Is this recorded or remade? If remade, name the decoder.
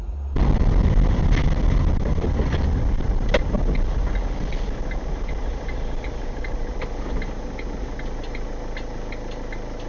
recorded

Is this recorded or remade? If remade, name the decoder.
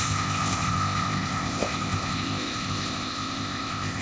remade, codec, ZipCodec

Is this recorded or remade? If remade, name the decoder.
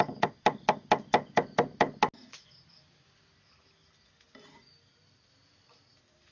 recorded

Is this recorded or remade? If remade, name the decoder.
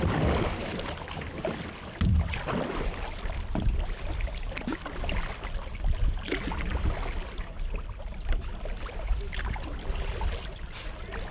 recorded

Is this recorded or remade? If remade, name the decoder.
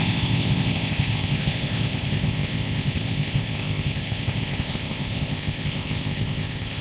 remade, codec, ZipCodec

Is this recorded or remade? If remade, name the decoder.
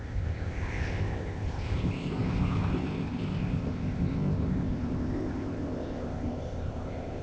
remade, codec, ZipCodec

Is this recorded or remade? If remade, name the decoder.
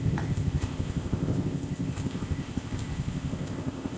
remade, codec, ZipCodec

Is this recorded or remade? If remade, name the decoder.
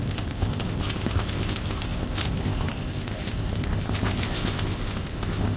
remade, codec, ZipCodec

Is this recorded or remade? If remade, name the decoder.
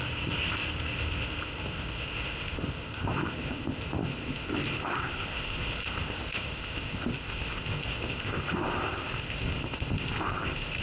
remade, codec, ZipCodec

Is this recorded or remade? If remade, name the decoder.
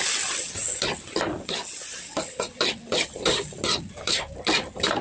recorded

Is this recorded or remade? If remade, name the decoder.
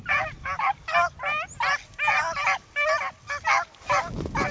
recorded